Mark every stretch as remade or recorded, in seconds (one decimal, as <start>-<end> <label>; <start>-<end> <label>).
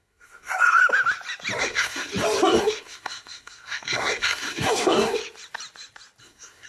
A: 0.0-0.8 remade; 0.8-1.6 recorded; 1.6-2.1 remade; 2.1-2.6 recorded; 2.6-5.2 remade; 5.2-6.2 recorded; 6.2-6.7 remade